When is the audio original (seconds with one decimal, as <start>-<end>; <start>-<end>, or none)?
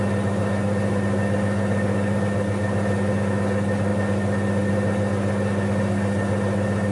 0.0-6.9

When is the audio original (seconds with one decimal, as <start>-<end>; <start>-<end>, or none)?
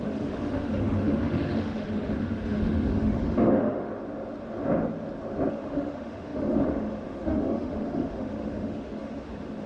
3.9-5.5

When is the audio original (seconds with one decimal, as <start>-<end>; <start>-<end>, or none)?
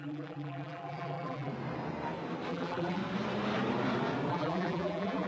1.5-2.5; 3.0-4.3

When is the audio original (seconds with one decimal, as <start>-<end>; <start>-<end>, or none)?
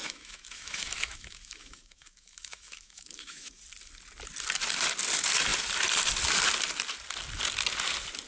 3.6-8.3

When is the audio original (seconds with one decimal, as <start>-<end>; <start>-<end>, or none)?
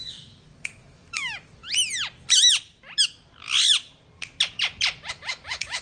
1.6-5.1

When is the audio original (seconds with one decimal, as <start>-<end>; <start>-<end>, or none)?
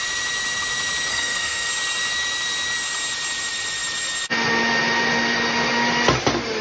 0.0-1.1; 1.7-6.6